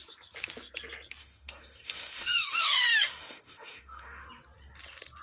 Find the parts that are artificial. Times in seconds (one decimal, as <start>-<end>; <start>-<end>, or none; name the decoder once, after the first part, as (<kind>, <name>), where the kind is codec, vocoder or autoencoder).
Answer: 1.2-4.3 (autoencoder, DAC-VAE)